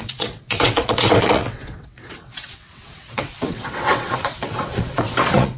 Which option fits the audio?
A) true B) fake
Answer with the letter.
B